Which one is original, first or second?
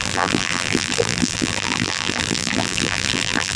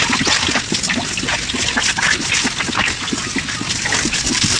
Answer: second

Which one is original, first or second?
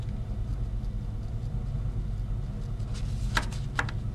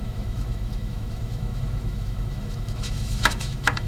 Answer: first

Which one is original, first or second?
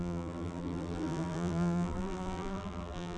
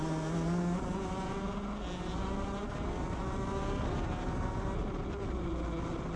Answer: second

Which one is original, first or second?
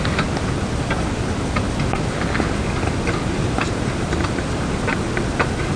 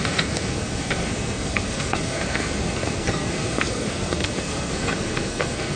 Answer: first